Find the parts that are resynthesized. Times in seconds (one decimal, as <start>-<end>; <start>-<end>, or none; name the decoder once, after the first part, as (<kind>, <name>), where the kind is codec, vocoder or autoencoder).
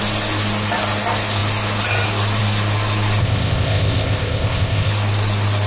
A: 3.2-4.9 (codec, ZipCodec)